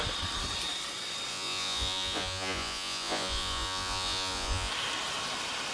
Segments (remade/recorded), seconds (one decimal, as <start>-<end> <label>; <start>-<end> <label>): 0.0-1.3 recorded; 1.3-4.7 remade; 4.7-5.7 recorded

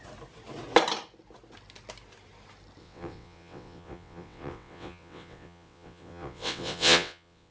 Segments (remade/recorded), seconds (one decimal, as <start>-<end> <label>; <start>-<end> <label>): 0.0-2.8 recorded; 2.8-7.5 remade

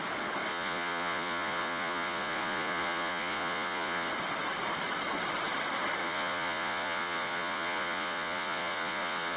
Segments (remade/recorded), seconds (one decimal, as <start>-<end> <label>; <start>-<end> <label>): 0.0-0.5 recorded; 0.5-4.1 remade; 4.1-6.0 recorded; 6.0-9.4 remade

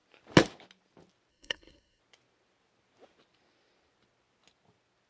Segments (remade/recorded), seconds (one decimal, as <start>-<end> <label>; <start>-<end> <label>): 0.0-1.3 recorded; 1.3-2.0 remade; 2.0-5.1 recorded

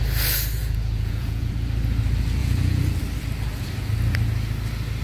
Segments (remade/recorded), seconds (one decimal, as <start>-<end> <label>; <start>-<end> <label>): 0.0-0.6 recorded; 0.6-1.5 remade; 1.5-2.4 recorded; 2.4-2.9 remade; 2.9-5.0 recorded